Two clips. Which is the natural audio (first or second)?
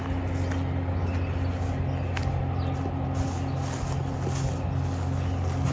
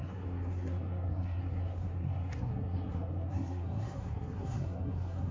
first